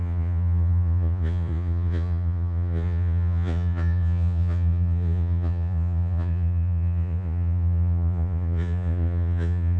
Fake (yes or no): yes